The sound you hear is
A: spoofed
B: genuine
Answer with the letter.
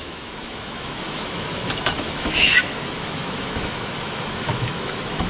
A